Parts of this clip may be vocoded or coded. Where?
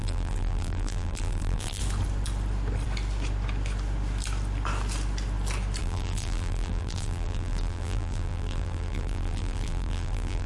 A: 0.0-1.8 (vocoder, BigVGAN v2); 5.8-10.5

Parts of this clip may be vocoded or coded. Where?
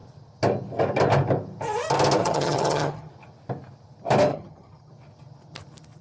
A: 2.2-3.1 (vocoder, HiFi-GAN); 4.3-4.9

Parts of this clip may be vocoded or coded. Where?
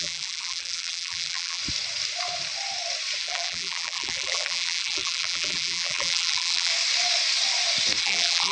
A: 0.0-1.6 (vocoder, BigVGAN v2); 3.2-6.7; 8.0-8.5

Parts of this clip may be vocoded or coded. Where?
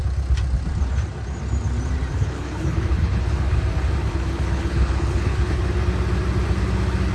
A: 2.1-3.6 (codec, HILCodec); 4.0-5.6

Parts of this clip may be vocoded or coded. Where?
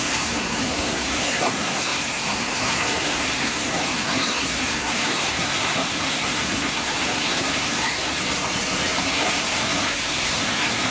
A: 0.0-8.2 (codec, SNAC); 9.0-10.9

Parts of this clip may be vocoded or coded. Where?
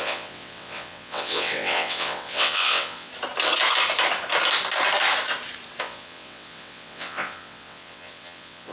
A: 0.0-3.1 (vocoder, WaveNeXt); 5.8-8.7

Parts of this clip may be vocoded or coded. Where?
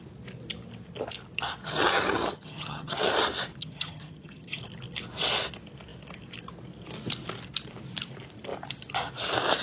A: 1.6-3.1 (vocoder, HiFi-GAN); 3.6-4.6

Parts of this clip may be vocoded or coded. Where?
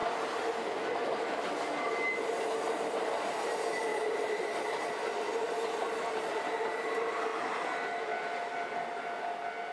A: none